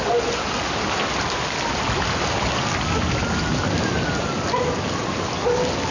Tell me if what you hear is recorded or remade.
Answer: recorded